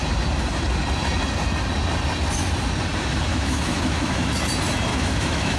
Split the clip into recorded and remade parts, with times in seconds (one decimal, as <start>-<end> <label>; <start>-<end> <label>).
0.0-3.3 recorded; 3.3-4.4 remade; 4.4-4.9 recorded; 4.9-5.6 remade